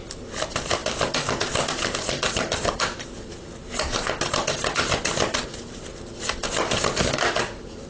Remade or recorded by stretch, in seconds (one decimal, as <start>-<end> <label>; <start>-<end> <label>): 0.0-7.9 recorded